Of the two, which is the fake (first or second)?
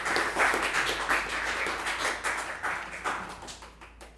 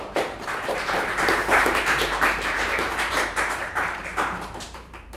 second